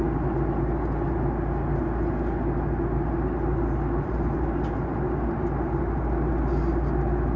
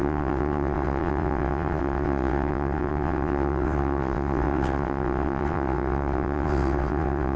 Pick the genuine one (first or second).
first